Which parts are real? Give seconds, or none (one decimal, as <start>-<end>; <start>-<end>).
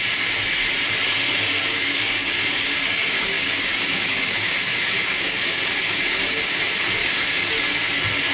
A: 0.0-1.7; 6.6-7.0; 7.5-8.3